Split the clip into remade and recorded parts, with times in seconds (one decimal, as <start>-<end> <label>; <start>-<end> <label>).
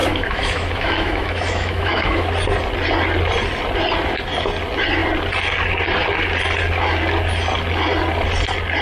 0.0-2.3 remade; 2.3-8.8 recorded